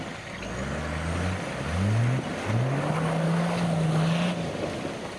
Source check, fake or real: real